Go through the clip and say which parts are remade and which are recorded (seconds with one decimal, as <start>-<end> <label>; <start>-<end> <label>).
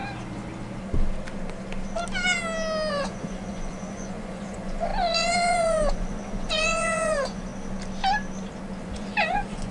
0.0-2.9 recorded; 2.9-7.5 remade; 7.5-8.8 recorded; 8.8-9.7 remade